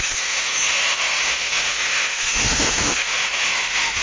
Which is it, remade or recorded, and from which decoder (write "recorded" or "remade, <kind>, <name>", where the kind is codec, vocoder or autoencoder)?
remade, autoencoder, DAC-VAE